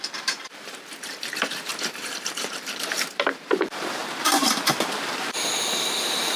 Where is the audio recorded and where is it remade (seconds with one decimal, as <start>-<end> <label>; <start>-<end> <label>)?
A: 0.0-4.0 remade; 4.0-4.7 recorded; 4.7-6.4 remade